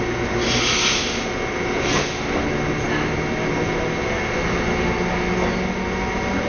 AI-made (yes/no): no